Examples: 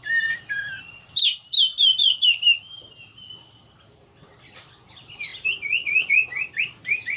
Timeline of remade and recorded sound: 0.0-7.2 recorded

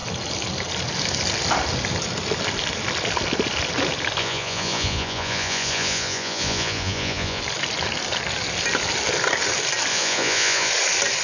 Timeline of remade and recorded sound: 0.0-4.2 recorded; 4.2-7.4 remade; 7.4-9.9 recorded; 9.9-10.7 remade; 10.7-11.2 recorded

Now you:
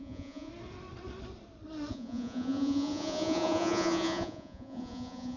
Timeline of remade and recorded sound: 0.0-0.5 remade; 0.5-1.9 recorded; 1.9-5.4 remade

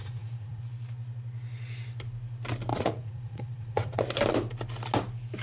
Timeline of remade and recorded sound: 0.0-0.6 remade; 0.6-2.7 recorded; 2.7-4.0 remade; 4.0-5.4 recorded

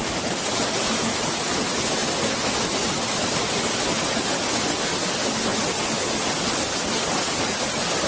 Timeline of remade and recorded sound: 0.0-8.1 recorded